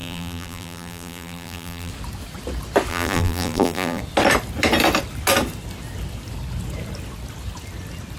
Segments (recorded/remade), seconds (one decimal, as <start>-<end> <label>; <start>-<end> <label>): 0.0-1.9 remade; 1.9-2.9 recorded; 2.9-4.0 remade; 4.0-8.2 recorded